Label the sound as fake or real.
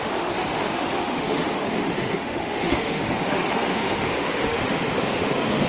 fake